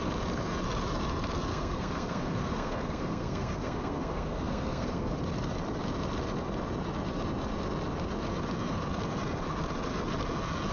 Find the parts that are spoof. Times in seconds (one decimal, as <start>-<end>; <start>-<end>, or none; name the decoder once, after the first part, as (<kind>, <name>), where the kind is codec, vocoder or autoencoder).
1.5-5.2 (codec, SNAC)